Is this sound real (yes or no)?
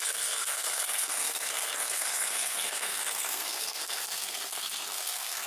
no